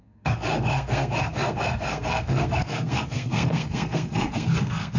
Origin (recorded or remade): remade